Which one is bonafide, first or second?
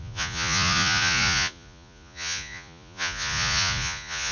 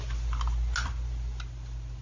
second